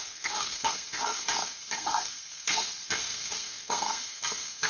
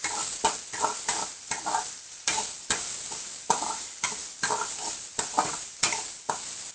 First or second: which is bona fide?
second